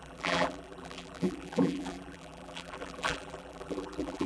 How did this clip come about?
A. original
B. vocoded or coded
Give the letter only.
B